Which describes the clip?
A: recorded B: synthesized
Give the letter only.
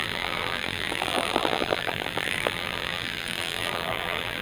B